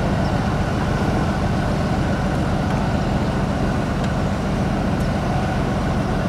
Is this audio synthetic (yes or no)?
no